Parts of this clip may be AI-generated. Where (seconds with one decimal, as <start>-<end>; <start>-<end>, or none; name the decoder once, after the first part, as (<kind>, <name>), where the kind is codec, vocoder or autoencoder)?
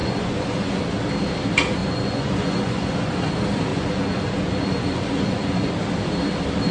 0.0-0.8 (vocoder, Vocos); 1.8-3.3; 3.7-5.7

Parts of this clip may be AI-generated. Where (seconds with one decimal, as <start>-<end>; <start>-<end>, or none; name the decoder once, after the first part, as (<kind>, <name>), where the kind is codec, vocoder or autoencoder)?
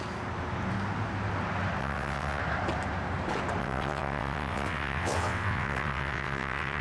1.8-2.4 (vocoder, WaveNeXt); 3.6-6.8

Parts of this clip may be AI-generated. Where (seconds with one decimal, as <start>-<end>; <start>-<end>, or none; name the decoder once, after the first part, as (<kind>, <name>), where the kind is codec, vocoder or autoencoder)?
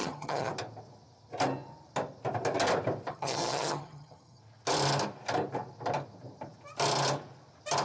0.0-0.5 (vocoder, HiFi-GAN); 3.1-4.4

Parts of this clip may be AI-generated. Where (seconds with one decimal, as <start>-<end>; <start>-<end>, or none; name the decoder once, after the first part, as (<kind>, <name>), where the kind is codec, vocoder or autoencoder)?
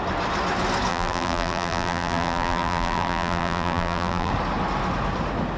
0.9-4.3 (vocoder, BigVGAN v2)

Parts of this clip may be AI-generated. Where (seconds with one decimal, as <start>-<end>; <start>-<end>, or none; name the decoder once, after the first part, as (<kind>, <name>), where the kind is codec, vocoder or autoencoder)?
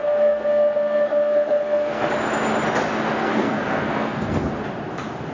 0.0-2.1 (codec, SNAC); 3.2-4.5